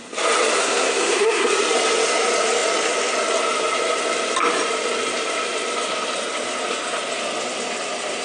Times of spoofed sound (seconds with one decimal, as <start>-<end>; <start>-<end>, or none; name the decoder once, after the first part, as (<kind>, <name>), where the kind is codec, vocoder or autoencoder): 0.6-1.5 (codec, SNAC)